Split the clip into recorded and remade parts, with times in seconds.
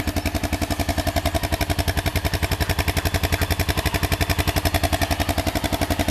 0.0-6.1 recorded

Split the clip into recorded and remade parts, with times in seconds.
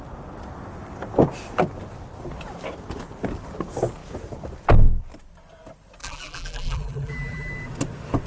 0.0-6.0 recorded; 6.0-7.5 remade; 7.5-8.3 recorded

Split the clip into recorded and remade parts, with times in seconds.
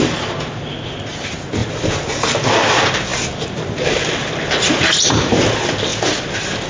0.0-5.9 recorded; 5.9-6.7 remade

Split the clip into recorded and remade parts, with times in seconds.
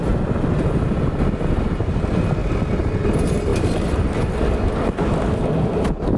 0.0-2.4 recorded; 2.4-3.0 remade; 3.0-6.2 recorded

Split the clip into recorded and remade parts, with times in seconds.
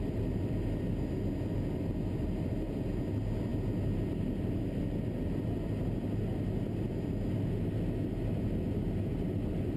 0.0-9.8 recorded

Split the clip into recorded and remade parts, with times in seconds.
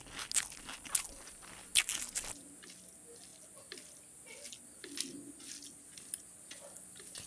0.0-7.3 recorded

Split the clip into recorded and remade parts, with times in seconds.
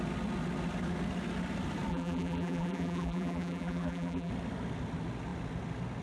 0.0-1.9 recorded; 1.9-4.3 remade; 4.3-6.0 recorded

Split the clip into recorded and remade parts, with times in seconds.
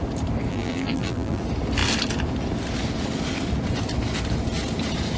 0.0-0.5 recorded; 0.5-1.4 remade; 1.4-5.2 recorded